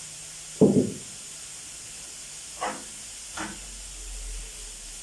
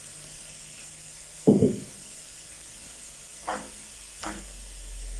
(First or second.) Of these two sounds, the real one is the first